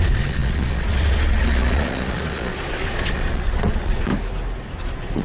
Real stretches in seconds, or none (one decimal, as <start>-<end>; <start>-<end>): 4.1-4.8